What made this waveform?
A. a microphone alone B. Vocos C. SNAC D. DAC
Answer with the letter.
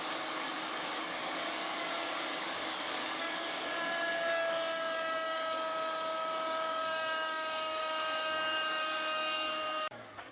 D